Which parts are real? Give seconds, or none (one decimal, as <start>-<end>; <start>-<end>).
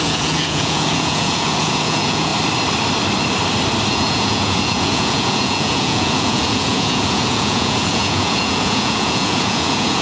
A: 2.3-3.9